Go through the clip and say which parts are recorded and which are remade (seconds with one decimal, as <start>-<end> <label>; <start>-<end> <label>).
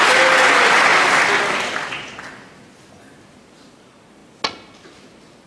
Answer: 0.0-5.5 recorded